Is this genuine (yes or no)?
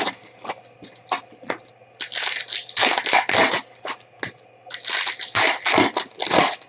yes